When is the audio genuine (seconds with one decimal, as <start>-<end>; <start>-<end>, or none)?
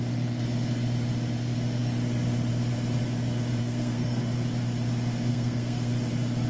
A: 0.0-3.6; 4.2-5.3; 5.9-6.5